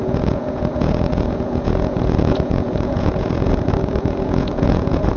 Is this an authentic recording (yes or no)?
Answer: no